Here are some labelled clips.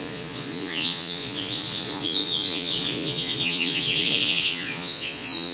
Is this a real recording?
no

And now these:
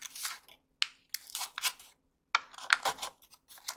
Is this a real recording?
yes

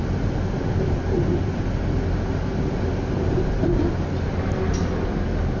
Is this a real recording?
yes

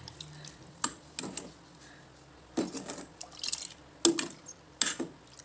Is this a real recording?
yes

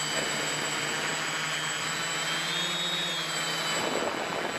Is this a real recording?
yes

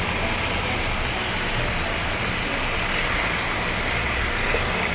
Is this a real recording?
yes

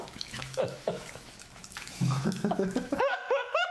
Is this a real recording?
no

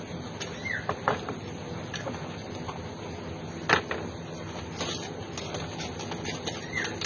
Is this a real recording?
yes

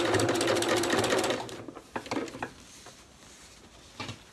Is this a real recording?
yes